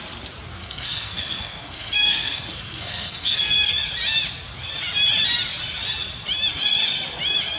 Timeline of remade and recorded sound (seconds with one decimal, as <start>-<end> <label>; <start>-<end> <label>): 0.0-0.6 recorded; 0.6-3.7 remade; 3.7-7.6 recorded